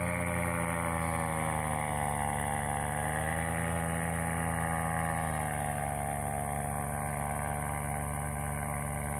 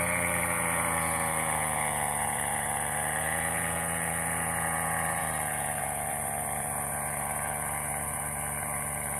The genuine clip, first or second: first